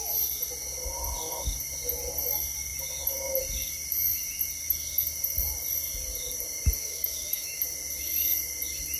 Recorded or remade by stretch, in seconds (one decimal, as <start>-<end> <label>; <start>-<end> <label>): 0.0-6.8 recorded; 6.8-7.6 remade; 7.6-9.0 recorded